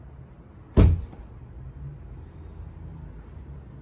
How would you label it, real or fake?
real